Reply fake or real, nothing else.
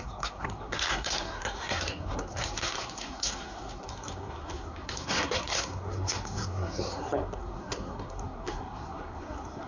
fake